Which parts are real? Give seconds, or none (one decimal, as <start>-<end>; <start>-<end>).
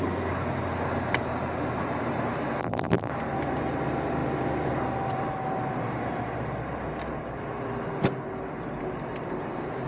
0.0-2.6; 3.1-9.9